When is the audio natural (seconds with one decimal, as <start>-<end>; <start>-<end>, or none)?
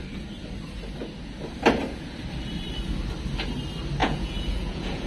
0.0-4.0